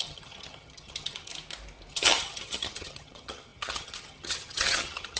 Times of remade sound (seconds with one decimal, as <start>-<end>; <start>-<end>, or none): 0.0-1.3; 1.9-5.2